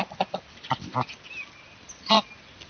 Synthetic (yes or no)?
no